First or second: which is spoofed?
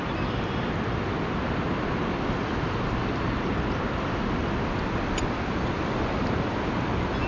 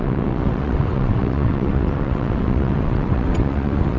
second